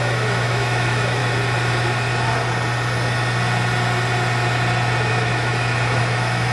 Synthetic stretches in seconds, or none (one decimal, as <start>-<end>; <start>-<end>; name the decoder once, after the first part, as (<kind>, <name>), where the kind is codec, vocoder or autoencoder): 0.0-1.2 (autoencoder, DAC-VAE); 5.1-6.5